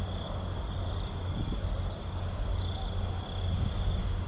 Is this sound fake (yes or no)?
no